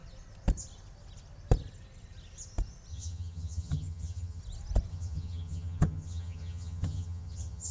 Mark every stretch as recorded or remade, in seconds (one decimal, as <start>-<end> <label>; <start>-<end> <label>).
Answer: 0.0-2.9 recorded; 2.9-4.4 remade; 4.4-4.9 recorded; 4.9-7.7 remade